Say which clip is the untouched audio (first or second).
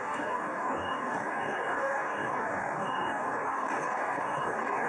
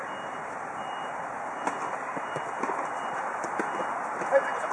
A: second